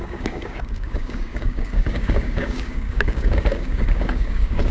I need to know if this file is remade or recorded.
remade